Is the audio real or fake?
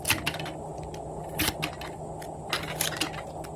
real